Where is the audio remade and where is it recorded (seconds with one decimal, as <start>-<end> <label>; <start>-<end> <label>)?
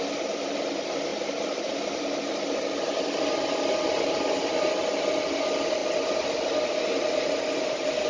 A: 0.0-8.1 recorded